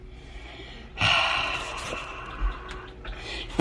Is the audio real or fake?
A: real